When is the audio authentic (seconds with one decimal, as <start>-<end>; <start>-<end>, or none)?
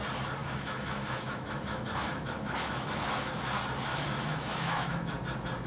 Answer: 0.0-0.4; 3.4-3.9; 5.1-5.7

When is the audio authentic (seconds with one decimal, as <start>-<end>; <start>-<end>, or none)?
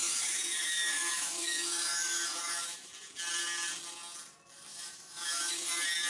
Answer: 2.9-4.7; 5.5-6.1